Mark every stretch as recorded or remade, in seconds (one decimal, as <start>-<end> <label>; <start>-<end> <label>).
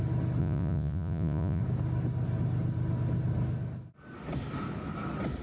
0.0-0.4 recorded; 0.4-1.6 remade; 1.6-5.4 recorded